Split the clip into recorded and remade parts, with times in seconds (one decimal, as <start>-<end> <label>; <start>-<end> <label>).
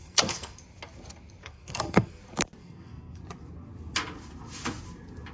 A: 0.0-0.6 remade; 0.6-1.4 recorded; 1.4-2.2 remade; 2.2-2.6 recorded; 2.6-3.2 remade; 3.2-5.3 recorded